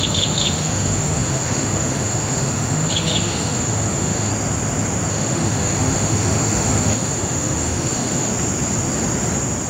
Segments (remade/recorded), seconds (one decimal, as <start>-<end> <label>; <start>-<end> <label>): 0.0-4.3 remade; 4.3-5.1 recorded; 5.1-8.3 remade; 8.3-9.7 recorded